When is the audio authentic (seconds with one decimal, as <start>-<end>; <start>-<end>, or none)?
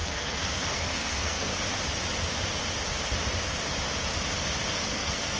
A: 1.5-4.7